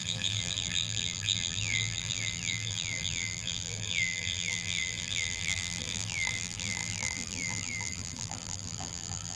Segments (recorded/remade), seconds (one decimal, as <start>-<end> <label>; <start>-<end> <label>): 0.0-9.4 remade